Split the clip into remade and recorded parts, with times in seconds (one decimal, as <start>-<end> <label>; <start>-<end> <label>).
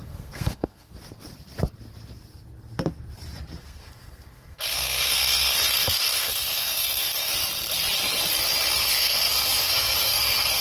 0.0-0.9 remade; 0.9-3.6 recorded; 3.6-7.3 remade; 7.3-8.8 recorded; 8.8-10.6 remade